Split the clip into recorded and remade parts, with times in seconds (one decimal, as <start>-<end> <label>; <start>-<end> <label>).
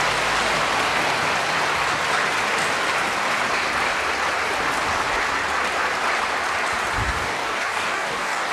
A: 0.0-7.0 recorded; 7.0-8.5 remade